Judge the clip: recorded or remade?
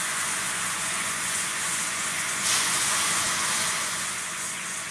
remade